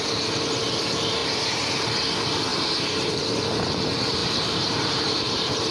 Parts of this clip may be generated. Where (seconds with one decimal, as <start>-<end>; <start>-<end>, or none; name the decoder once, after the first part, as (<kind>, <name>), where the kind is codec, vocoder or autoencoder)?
1.2-1.7 (vocoder, BigVGAN v2); 2.5-3.3; 4.2-5.7